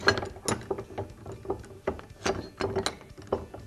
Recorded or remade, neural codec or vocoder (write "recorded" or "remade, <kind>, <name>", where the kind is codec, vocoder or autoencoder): recorded